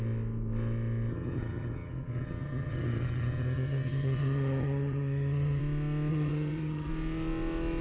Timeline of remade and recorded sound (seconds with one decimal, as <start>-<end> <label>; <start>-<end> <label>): 0.0-1.1 recorded; 1.1-5.6 remade; 5.6-6.1 recorded; 6.1-6.9 remade; 6.9-7.8 recorded